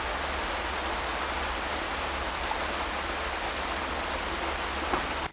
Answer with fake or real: real